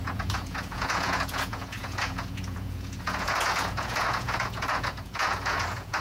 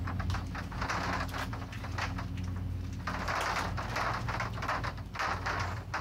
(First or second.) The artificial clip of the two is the first